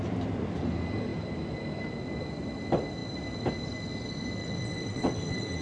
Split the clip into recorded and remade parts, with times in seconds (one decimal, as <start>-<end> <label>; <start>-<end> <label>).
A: 0.0-4.4 recorded; 4.4-5.6 remade